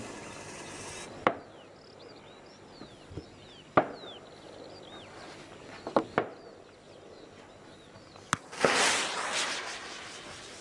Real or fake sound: real